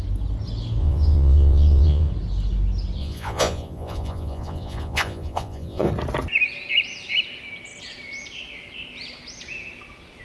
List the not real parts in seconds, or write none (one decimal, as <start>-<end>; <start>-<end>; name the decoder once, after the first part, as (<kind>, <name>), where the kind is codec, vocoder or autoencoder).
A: 0.8-2.1 (vocoder, Vocos); 3.0-5.9